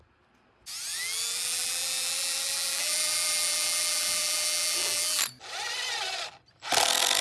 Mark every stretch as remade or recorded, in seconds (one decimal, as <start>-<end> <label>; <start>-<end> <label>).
0.0-0.9 recorded; 0.9-5.2 remade; 5.2-7.2 recorded